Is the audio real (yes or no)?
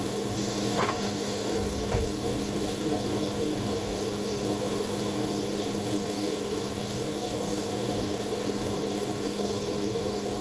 no